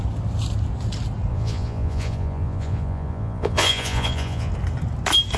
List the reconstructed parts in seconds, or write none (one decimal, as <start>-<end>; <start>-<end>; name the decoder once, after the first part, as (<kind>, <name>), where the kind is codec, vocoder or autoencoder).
1.3-4.5 (vocoder, Vocos)